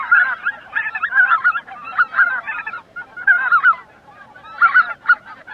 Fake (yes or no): yes